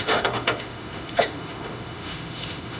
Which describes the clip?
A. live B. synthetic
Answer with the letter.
B